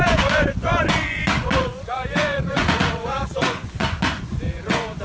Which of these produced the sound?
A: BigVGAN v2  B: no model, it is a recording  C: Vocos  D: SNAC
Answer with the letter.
C